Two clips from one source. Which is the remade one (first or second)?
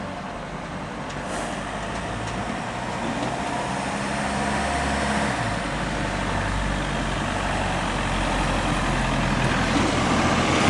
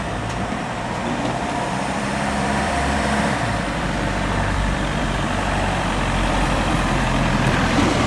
second